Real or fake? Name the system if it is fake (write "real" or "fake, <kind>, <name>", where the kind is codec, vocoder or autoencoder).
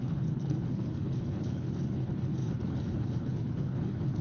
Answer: fake, codec, HILCodec